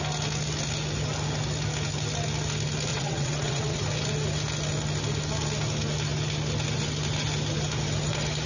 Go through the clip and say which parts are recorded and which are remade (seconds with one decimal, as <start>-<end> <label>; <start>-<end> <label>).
0.0-2.9 recorded; 2.9-3.8 remade; 3.8-8.5 recorded